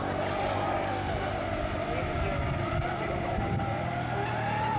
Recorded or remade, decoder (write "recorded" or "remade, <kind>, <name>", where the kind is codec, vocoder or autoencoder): recorded